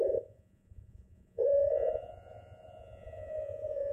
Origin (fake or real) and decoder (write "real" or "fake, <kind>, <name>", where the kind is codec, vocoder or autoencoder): fake, vocoder, Vocos